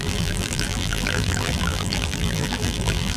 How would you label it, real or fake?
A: fake